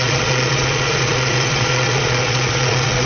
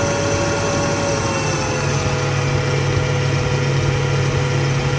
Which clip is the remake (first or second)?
first